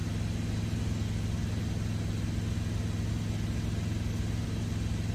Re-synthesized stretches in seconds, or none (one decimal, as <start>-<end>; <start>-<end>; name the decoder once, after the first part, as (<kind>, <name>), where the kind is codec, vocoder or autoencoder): none